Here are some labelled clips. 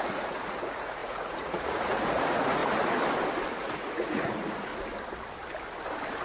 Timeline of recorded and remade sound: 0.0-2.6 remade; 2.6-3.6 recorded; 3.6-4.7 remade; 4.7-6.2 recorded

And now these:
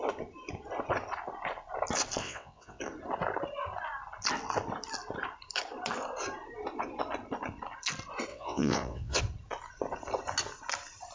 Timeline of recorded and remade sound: 0.0-2.2 recorded; 2.2-2.8 remade; 2.8-8.3 recorded; 8.3-9.2 remade; 9.2-11.1 recorded

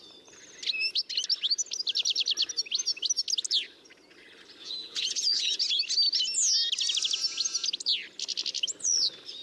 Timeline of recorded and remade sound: 0.0-4.6 recorded; 4.6-5.6 remade; 5.6-9.4 recorded

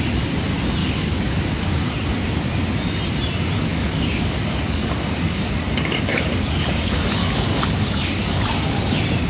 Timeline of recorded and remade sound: 0.0-0.8 recorded; 0.8-1.9 remade; 1.9-3.7 recorded; 3.7-8.8 remade; 8.8-9.3 recorded